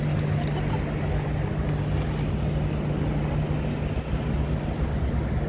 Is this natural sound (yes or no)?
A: yes